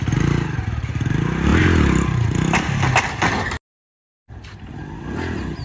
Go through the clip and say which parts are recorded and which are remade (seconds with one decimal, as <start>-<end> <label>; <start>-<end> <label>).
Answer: 0.0-5.6 recorded